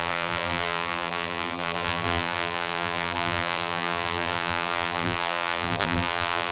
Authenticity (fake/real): fake